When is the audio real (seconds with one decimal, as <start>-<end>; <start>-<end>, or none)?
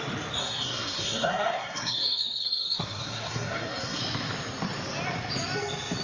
0.0-0.4; 4.0-6.0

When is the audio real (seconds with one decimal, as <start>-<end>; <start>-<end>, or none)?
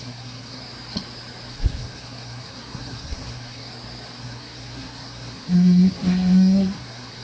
0.6-1.5; 3.7-4.2